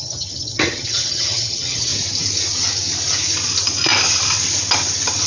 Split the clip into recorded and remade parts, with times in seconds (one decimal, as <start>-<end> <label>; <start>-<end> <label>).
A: 0.0-1.9 remade; 1.9-5.3 recorded